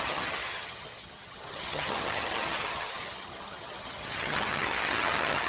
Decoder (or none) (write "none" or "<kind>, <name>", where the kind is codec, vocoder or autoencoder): vocoder, HiFi-GAN